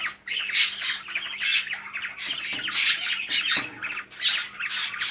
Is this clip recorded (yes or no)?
yes